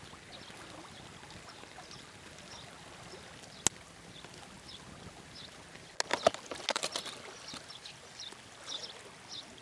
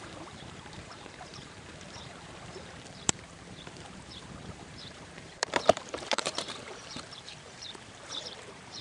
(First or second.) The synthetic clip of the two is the second